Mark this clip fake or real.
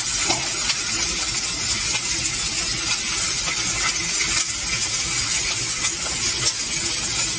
real